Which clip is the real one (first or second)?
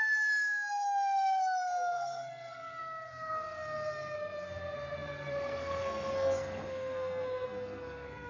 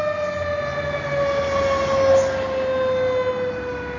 second